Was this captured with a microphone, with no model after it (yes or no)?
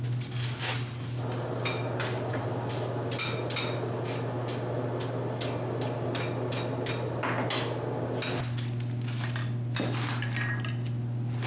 yes